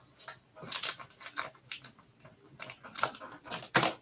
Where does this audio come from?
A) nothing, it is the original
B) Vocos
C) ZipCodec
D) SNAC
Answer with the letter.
A